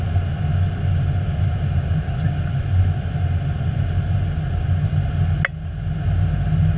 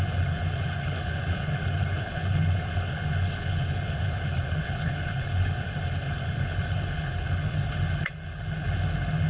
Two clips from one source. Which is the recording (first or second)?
first